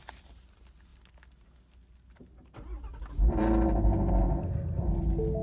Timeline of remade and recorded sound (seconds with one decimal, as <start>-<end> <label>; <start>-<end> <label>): 0.0-5.4 recorded